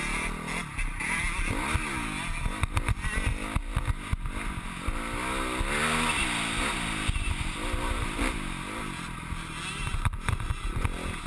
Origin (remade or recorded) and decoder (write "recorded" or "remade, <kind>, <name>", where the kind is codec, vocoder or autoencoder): recorded